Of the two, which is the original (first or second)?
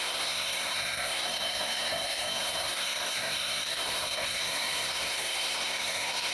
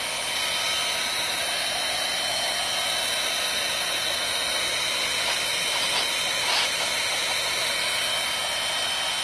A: second